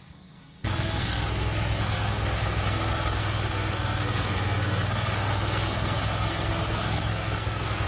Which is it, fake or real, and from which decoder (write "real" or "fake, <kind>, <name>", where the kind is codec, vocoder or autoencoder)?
fake, codec, SNAC